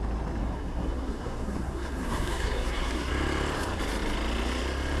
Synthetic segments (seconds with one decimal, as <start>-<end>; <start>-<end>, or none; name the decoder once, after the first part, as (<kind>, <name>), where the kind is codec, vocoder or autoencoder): 0.4-3.1 (codec, SNAC)